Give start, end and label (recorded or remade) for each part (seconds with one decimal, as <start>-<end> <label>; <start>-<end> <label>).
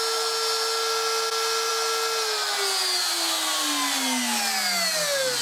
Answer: 0.0-5.4 recorded